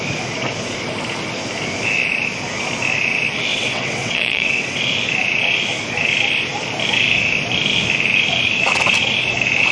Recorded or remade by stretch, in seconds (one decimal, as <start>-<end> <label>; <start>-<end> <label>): 0.0-3.5 recorded; 3.5-4.8 remade; 4.8-9.7 recorded